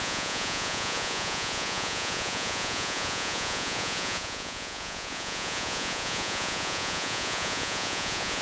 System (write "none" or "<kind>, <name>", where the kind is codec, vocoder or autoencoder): vocoder, Vocos